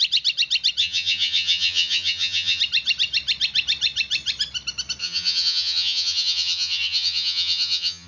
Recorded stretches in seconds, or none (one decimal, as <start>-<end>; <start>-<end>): 0.0-0.8; 2.6-5.0